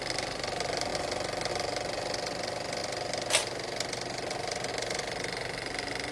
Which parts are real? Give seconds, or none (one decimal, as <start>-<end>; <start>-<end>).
0.0-6.1

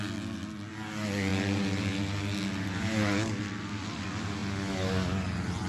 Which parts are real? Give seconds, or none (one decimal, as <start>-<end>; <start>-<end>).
0.0-5.7

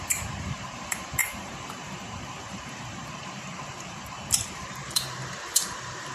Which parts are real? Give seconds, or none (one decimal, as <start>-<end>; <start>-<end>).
none

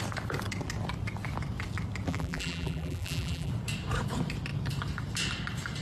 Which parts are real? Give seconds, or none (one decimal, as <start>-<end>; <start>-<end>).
0.0-2.1; 3.5-5.8

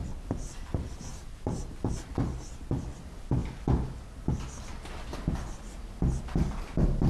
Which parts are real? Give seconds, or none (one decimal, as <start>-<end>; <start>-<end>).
0.7-1.1; 2.1-7.1

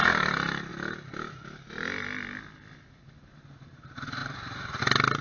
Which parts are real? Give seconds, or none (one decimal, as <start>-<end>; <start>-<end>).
0.0-4.2; 4.8-5.2